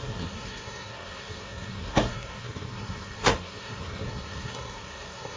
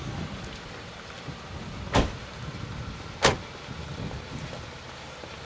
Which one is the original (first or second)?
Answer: second